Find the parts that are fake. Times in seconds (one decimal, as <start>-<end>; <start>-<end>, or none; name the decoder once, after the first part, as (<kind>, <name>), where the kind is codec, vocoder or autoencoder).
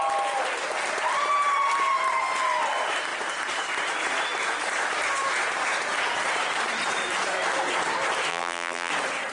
8.3-8.9 (vocoder, BigVGAN v2)